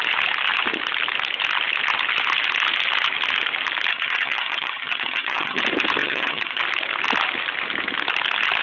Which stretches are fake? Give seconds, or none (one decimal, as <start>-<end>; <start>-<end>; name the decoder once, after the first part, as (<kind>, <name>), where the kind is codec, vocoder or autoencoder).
3.9-5.6 (vocoder, HiFi-GAN); 6.0-6.6